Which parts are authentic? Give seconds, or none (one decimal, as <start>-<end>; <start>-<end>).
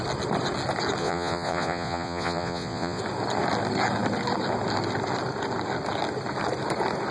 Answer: 0.0-1.0; 3.0-7.1